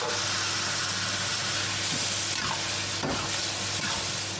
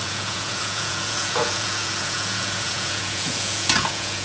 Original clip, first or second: first